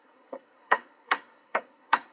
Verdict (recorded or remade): remade